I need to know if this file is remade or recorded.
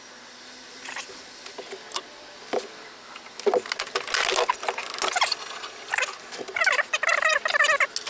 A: recorded